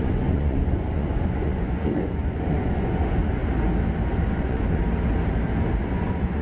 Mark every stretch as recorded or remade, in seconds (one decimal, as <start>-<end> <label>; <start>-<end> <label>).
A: 0.0-3.4 remade; 3.4-4.3 recorded; 4.3-4.8 remade; 4.8-5.8 recorded; 5.8-6.4 remade